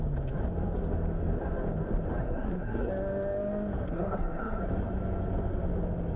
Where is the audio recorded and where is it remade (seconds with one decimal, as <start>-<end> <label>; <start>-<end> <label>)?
0.0-2.2 recorded; 2.2-2.9 remade; 2.9-3.8 recorded; 3.8-4.6 remade; 4.6-6.2 recorded